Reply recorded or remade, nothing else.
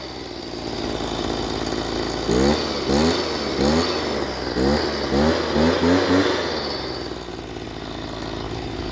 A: recorded